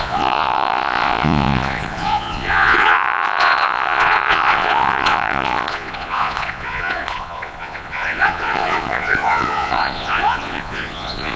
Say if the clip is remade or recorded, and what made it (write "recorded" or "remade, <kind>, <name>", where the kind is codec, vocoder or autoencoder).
remade, vocoder, Vocos